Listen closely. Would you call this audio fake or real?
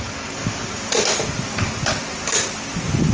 real